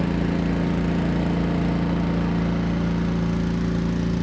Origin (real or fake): real